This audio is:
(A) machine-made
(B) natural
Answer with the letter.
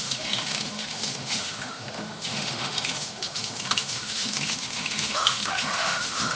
A